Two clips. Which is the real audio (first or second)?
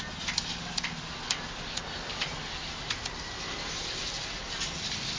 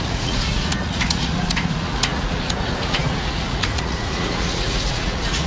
first